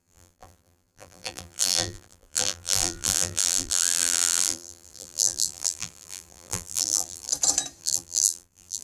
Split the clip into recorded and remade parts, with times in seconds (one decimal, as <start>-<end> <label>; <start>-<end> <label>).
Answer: 0.0-7.3 remade; 7.3-7.8 recorded; 7.8-8.8 remade